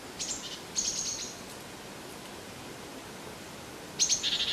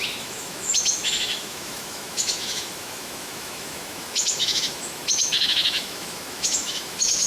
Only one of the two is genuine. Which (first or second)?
first